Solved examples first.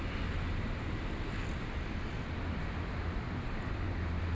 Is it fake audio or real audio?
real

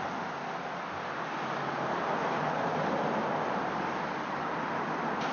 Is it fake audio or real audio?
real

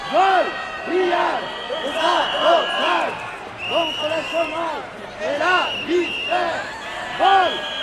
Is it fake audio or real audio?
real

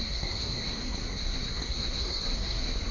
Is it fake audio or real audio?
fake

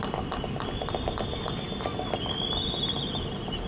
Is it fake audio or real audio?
real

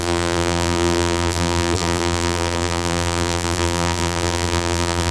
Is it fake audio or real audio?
fake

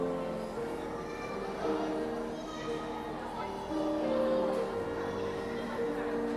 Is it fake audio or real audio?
real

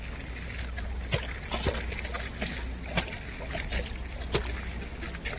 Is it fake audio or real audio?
real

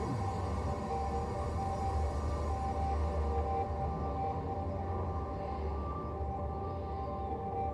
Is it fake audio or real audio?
real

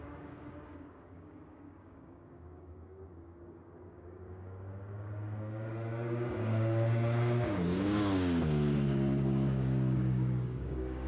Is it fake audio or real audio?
fake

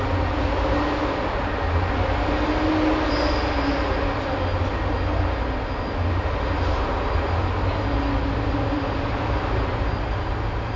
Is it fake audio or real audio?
real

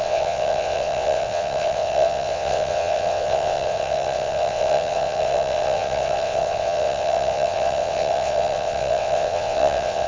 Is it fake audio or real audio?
fake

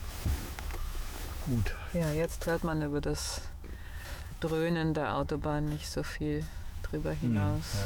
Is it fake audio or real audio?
fake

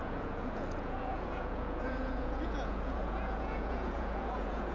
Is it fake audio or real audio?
fake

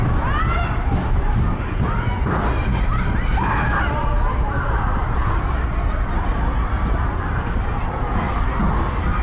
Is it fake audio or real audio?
fake